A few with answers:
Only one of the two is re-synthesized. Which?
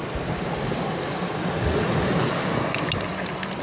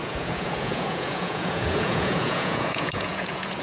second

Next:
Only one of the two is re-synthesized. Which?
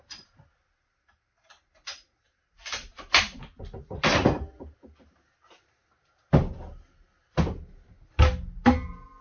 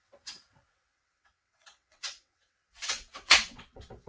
second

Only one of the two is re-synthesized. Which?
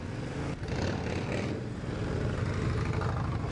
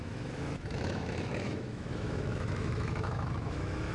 second